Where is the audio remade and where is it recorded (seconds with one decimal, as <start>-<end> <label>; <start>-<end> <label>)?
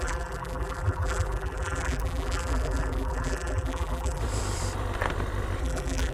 0.0-4.2 remade; 4.2-5.6 recorded; 5.6-6.1 remade